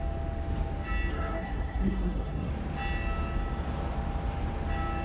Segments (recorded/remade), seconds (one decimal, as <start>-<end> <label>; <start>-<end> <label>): 0.0-1.1 recorded; 1.1-2.5 remade; 2.5-5.0 recorded